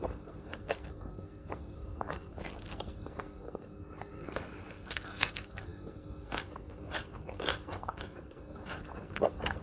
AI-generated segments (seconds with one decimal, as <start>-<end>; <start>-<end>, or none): 0.0-9.6